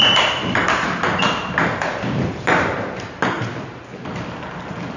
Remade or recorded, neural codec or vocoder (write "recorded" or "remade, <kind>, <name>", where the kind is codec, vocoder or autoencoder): recorded